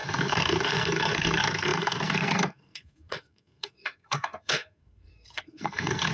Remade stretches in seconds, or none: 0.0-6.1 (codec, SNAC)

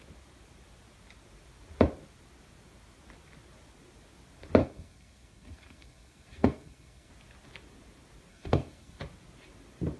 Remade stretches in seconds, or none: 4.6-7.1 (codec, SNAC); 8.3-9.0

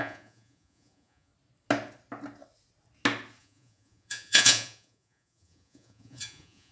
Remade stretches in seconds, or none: 0.0-1.3 (vocoder, Vocos); 3.4-6.7

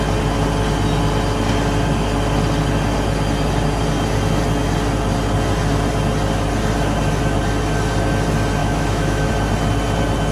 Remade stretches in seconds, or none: 8.6-9.3 (autoencoder, DAC-VAE)

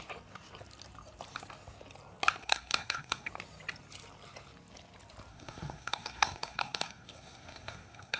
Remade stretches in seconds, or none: 2.4-3.3 (codec, SNAC); 5.3-8.2